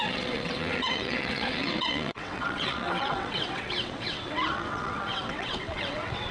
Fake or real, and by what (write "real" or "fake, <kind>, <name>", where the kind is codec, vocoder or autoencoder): fake, vocoder, WaveNeXt